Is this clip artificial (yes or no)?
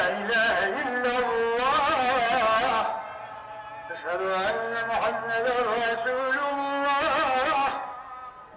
no